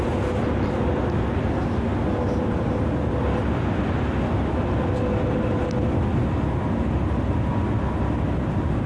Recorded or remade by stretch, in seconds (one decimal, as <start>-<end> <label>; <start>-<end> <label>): 0.0-8.9 recorded